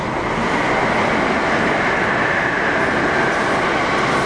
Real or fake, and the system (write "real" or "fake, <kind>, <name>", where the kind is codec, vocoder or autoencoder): real